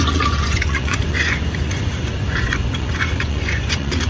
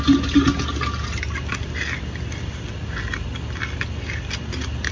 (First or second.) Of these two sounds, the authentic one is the second